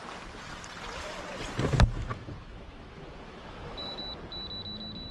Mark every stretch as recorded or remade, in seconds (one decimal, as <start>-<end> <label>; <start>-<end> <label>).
0.0-2.1 recorded; 2.1-4.0 remade; 4.0-5.1 recorded